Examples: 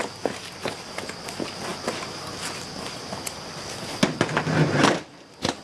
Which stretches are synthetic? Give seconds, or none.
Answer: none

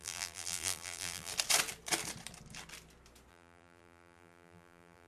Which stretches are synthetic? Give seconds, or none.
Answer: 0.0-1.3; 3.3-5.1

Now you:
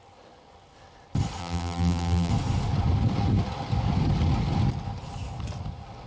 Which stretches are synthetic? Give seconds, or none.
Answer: 1.4-2.3